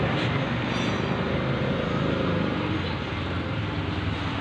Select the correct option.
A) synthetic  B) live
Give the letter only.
B